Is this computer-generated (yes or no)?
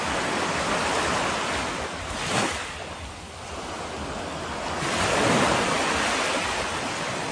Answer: no